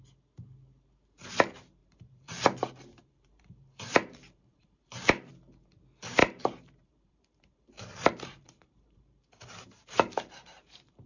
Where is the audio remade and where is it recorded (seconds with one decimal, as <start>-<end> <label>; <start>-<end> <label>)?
0.0-1.8 recorded; 1.8-5.3 remade; 5.3-6.2 recorded; 6.2-11.1 remade